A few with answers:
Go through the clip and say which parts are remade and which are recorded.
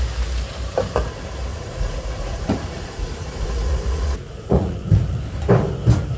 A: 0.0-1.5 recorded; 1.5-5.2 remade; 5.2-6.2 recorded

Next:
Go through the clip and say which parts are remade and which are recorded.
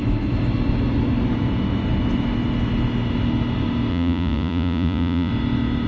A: 0.0-3.9 recorded; 3.9-5.3 remade; 5.3-5.9 recorded